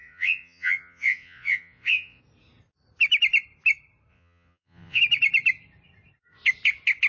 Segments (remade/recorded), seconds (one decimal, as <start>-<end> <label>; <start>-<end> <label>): 0.0-2.2 remade; 2.2-4.1 recorded; 4.1-5.0 remade; 5.0-7.1 recorded